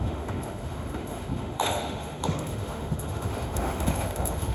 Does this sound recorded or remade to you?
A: remade